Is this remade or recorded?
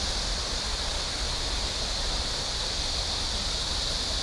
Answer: recorded